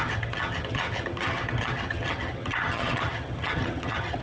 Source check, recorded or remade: remade